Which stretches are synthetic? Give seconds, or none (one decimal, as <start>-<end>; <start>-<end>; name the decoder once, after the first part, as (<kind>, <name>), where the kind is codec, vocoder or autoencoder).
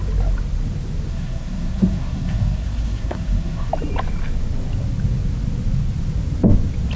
1.1-3.7 (codec, SNAC)